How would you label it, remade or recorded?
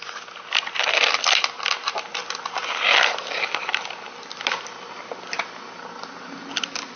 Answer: recorded